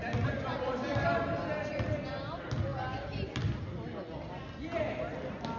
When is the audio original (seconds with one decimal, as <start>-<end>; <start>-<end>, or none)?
0.0-5.6